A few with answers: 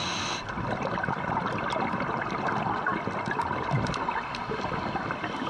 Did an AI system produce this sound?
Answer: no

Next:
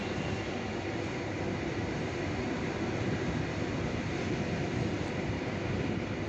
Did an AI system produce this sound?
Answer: no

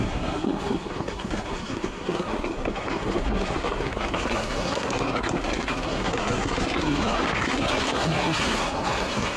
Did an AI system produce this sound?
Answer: yes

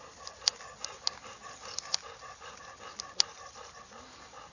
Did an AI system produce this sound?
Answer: no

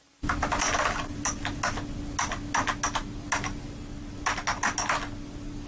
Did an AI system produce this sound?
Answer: no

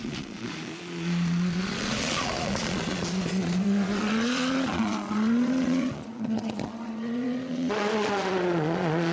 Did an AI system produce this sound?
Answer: yes